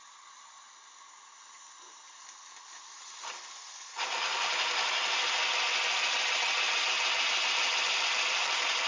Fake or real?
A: real